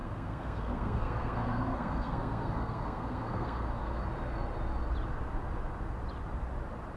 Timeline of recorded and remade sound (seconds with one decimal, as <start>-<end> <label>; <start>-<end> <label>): 0.0-4.0 remade; 4.0-7.0 recorded